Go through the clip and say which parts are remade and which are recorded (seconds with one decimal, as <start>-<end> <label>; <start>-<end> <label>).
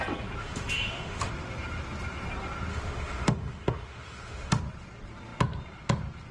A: 0.0-0.4 recorded; 0.4-1.3 remade; 1.3-2.7 recorded; 2.7-4.6 remade; 4.6-6.3 recorded